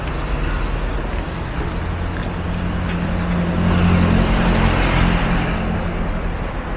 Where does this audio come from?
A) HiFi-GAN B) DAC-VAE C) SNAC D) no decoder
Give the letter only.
D